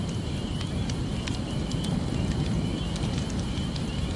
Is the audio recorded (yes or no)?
no